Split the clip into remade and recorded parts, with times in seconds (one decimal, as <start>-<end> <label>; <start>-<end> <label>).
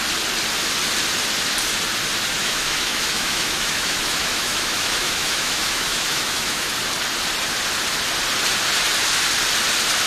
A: 0.0-2.4 recorded; 2.4-6.7 remade; 6.7-10.1 recorded